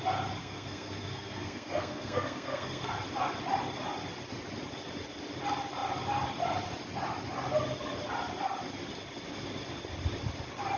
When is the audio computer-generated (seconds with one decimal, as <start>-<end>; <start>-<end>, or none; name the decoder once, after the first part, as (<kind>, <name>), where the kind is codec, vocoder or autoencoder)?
0.4-2.9 (codec, SNAC)